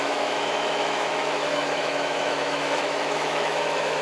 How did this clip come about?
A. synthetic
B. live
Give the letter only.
A